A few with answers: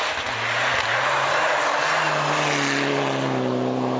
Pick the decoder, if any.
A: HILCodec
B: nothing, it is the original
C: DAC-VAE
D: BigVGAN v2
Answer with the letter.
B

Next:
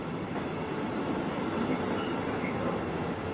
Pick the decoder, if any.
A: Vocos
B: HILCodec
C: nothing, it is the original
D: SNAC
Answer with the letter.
C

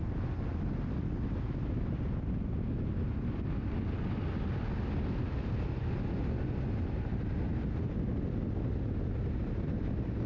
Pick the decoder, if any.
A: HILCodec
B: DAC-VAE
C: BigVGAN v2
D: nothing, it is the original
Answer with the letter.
D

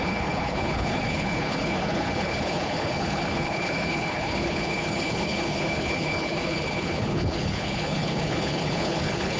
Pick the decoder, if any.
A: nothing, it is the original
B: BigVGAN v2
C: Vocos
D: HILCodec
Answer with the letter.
D